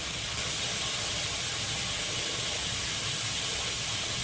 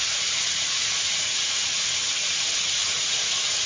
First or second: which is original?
first